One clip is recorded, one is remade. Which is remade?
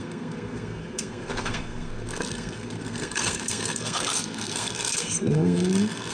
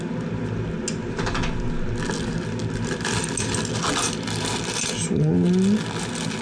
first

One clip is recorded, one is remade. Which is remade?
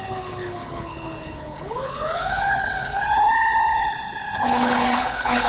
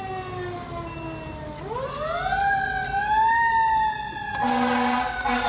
first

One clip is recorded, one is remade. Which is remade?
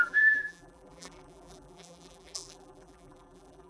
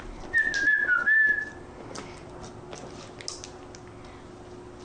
first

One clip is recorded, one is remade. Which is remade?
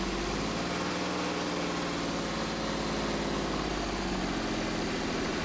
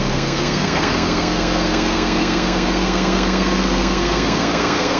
second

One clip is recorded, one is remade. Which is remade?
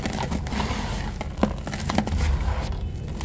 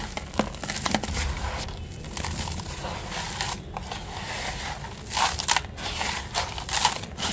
second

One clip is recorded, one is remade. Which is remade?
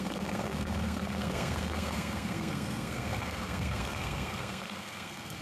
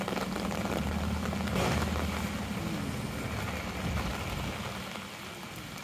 first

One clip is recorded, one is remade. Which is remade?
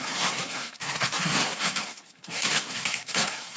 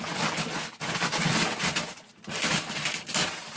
first